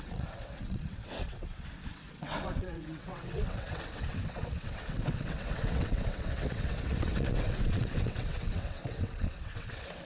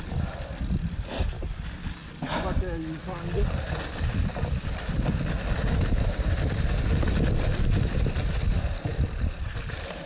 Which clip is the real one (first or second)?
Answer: second